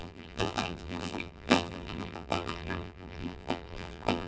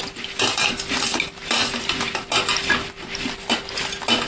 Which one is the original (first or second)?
second